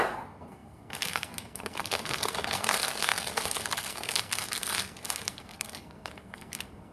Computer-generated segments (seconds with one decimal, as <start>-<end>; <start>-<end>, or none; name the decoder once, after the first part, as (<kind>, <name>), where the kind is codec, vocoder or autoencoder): 0.0-6.9 (codec, SNAC)